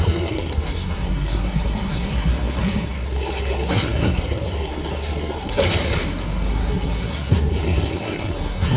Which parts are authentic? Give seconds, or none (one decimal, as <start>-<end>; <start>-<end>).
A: 5.6-6.5